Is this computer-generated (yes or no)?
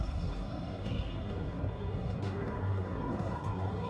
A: yes